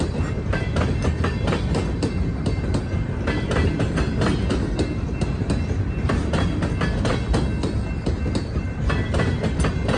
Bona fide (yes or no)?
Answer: yes